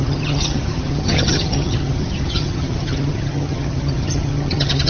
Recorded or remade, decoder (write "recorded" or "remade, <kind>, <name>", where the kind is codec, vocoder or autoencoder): remade, vocoder, HiFi-GAN